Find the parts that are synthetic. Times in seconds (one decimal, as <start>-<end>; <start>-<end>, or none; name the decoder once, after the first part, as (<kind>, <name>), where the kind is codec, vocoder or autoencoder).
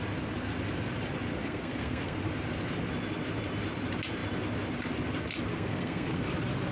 1.3-2.2 (codec, SNAC); 5.5-6.3